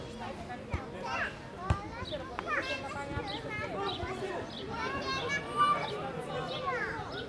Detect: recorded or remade recorded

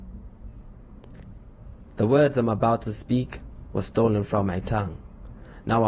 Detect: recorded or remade remade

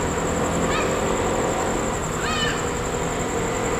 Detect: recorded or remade recorded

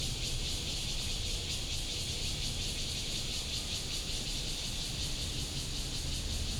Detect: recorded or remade remade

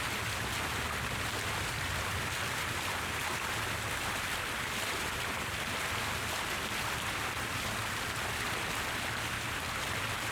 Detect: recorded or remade recorded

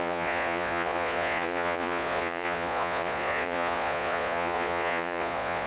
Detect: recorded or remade remade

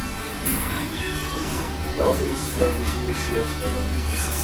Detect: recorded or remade remade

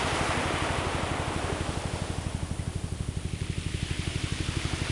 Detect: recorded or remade recorded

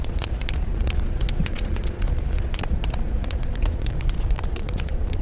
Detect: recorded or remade remade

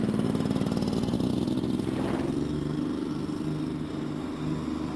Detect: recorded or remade recorded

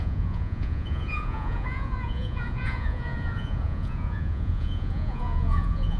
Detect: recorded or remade remade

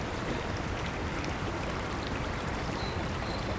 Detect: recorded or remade remade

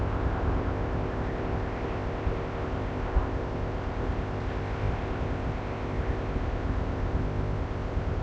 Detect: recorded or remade remade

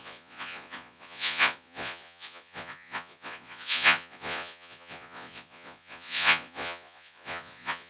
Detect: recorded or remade remade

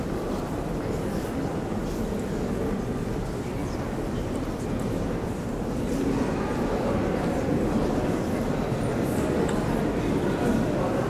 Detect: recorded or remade recorded